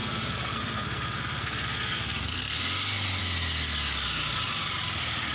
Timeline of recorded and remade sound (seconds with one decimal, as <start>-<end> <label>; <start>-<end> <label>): 0.0-2.6 remade; 2.6-5.3 recorded